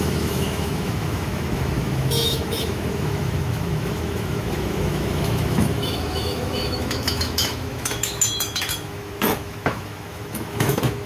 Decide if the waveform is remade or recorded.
remade